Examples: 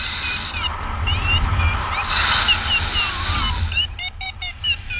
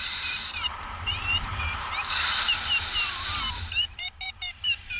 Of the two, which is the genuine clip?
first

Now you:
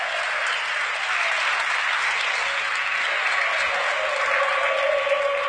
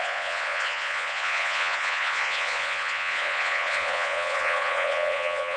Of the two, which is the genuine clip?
first